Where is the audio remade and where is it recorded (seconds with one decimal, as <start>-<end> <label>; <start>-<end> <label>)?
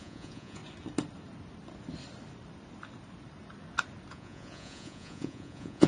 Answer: 0.0-0.6 remade; 0.6-4.1 recorded; 4.1-5.9 remade